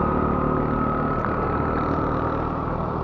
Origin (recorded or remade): recorded